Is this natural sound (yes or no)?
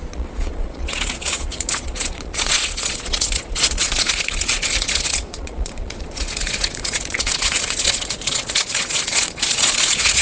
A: no